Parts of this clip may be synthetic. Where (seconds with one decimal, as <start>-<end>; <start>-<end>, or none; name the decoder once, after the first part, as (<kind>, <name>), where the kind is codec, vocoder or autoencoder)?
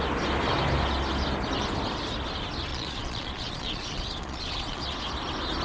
2.7-4.8 (vocoder, Vocos)